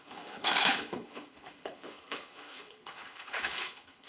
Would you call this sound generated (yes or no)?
yes